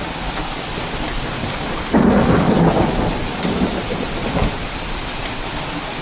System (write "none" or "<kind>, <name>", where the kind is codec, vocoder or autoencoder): none